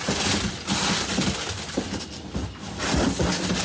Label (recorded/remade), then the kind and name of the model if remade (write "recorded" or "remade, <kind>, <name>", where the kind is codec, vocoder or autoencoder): recorded